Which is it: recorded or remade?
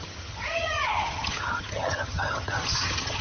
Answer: remade